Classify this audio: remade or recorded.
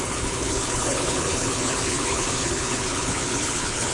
remade